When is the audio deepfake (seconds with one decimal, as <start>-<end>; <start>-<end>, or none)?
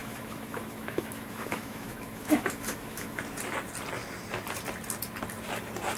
0.0-3.2